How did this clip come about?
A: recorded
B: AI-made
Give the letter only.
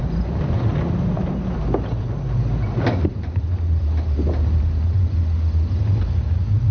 A